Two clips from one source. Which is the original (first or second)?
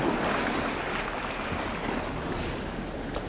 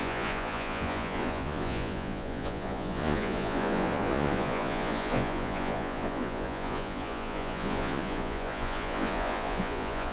first